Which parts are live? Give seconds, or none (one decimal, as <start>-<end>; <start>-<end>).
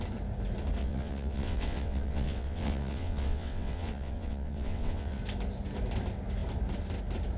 0.0-0.8; 5.2-7.4